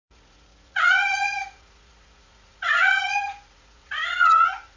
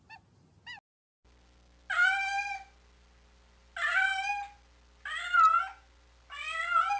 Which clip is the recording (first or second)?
second